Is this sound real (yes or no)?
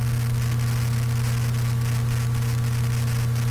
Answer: yes